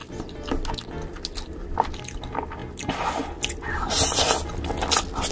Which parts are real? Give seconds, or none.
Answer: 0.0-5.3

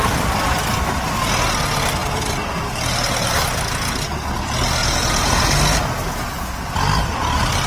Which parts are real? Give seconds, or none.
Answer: 0.0-4.8; 5.5-7.7

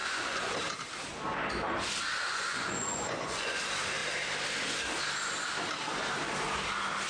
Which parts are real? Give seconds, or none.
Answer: 0.5-2.3; 3.6-7.1

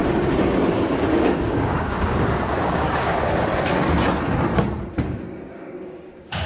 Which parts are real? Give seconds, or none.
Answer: 0.0-0.7; 3.5-4.9

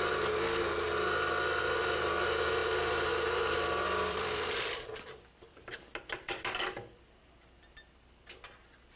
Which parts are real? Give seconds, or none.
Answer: 0.0-2.6; 7.2-9.0

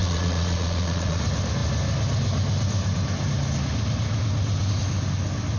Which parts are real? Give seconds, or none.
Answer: 1.2-5.6